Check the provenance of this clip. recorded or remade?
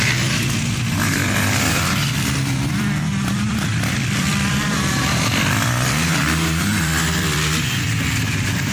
remade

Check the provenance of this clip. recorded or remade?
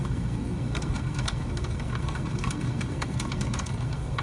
remade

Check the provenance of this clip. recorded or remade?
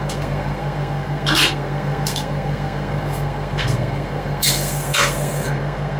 remade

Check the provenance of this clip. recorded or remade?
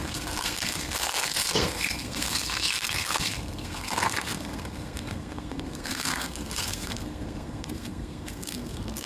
remade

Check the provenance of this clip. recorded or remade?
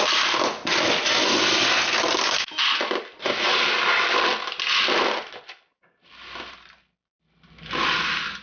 recorded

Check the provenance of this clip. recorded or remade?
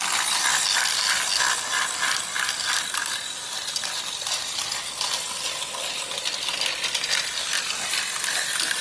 recorded